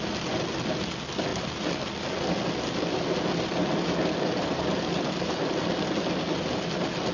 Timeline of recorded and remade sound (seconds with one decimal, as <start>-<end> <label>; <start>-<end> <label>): 0.0-7.1 recorded